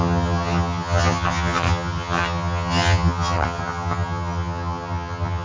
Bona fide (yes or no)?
no